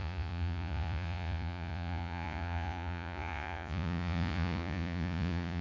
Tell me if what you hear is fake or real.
fake